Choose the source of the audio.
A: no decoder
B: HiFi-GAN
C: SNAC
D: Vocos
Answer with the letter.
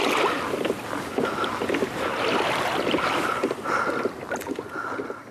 A